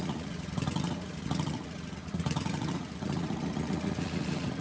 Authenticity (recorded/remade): remade